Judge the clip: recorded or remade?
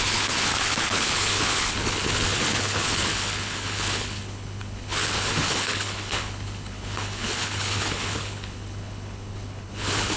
remade